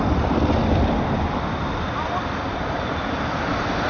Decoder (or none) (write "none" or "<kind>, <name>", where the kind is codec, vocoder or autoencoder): none